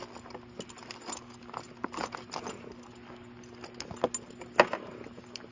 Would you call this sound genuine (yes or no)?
yes